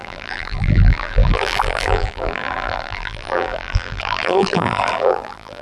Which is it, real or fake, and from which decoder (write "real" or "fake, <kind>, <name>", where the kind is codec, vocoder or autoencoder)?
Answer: fake, vocoder, BigVGAN v2